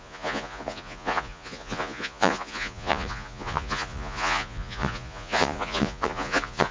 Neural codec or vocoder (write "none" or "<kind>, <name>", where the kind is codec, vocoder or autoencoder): vocoder, Vocos